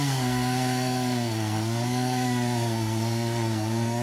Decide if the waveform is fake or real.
fake